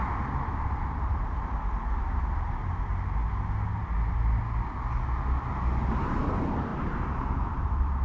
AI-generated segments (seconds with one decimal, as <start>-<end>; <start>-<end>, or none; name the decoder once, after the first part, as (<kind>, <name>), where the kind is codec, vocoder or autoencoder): 0.5-3.2 (vocoder, BigVGAN v2); 6.0-8.0